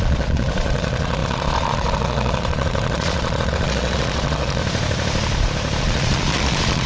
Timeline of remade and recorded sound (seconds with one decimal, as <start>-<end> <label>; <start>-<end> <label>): 0.0-4.6 remade; 4.6-5.8 recorded; 5.8-6.9 remade